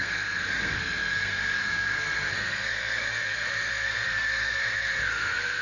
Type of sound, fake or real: fake